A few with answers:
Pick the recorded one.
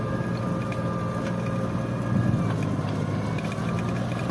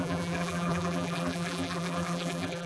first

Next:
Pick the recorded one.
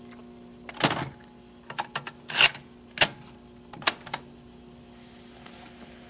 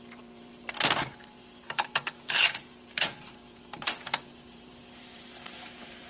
first